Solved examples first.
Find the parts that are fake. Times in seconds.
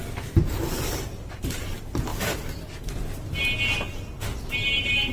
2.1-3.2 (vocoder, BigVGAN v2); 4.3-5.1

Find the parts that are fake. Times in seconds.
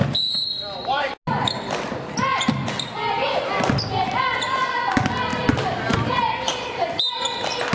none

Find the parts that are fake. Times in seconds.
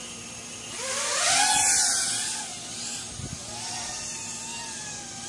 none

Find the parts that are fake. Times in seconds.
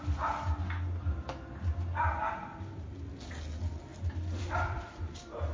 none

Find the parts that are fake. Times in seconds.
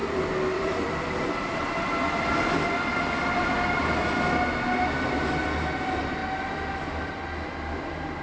0.0-4.0 (vocoder, BigVGAN v2); 5.4-6.2